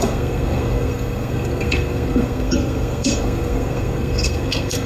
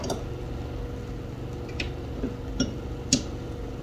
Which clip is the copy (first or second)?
first